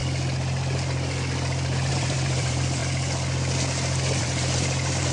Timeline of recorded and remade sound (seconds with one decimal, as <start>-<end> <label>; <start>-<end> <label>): 0.0-1.9 recorded; 1.9-2.8 remade; 2.8-4.2 recorded; 4.2-5.1 remade